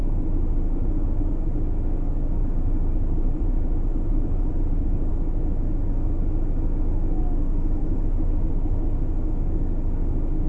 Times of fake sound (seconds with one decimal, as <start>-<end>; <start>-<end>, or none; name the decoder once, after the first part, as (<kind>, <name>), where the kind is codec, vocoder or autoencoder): 0.0-1.3 (vocoder, BigVGAN v2); 2.4-5.1; 7.8-8.5